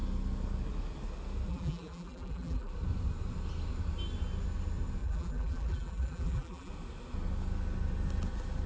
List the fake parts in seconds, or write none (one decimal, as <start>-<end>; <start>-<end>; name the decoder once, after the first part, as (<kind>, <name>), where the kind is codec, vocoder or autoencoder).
1.5-2.7 (vocoder, BigVGAN v2); 5.0-6.7